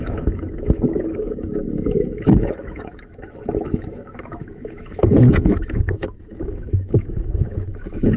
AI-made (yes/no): yes